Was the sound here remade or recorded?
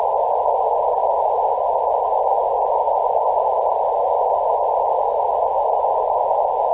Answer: recorded